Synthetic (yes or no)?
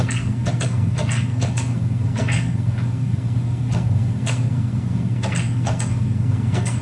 yes